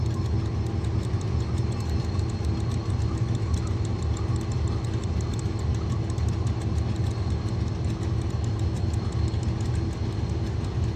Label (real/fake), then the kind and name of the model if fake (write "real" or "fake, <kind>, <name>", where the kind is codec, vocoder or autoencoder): real